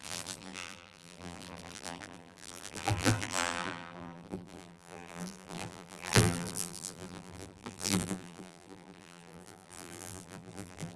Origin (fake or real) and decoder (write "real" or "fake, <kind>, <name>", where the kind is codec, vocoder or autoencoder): fake, vocoder, BigVGAN v2